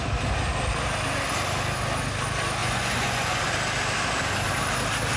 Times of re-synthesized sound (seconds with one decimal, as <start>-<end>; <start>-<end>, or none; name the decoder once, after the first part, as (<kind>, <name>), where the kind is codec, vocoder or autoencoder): 2.6-3.4 (vocoder, Vocos)